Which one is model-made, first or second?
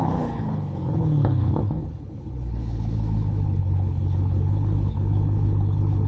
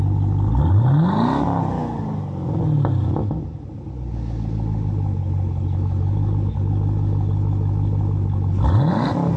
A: first